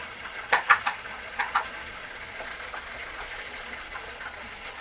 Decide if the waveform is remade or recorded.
remade